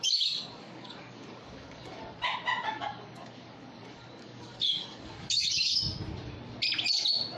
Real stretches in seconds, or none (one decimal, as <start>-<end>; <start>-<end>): 2.0-2.7; 5.9-7.4